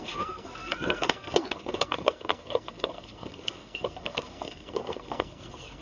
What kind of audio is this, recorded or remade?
remade